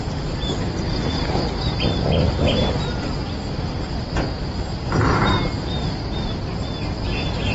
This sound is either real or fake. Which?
real